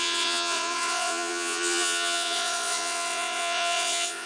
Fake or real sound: fake